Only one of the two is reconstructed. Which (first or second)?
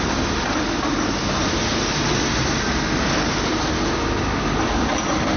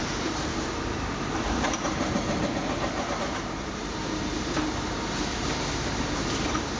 second